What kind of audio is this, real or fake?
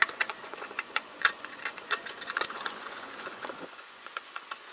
fake